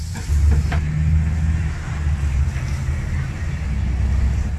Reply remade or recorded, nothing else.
recorded